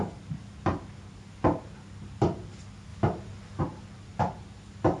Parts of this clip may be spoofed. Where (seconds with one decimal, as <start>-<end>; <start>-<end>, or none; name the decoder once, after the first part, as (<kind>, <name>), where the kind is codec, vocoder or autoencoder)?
none